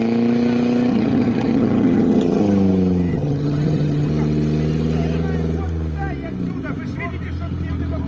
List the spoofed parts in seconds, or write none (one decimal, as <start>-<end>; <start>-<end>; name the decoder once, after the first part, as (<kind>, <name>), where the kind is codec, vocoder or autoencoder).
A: 0.9-2.4 (vocoder, HiFi-GAN); 3.1-4.1